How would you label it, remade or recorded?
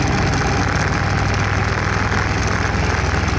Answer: recorded